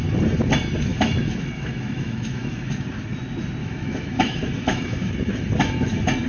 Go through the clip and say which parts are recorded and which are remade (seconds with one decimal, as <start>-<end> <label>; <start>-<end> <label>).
0.0-0.9 recorded; 0.9-2.7 remade; 2.7-3.6 recorded; 3.6-5.1 remade; 5.1-6.3 recorded